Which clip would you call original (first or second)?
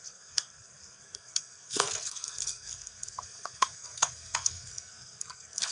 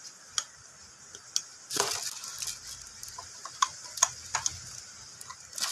second